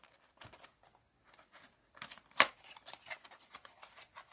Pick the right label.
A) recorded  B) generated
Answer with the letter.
A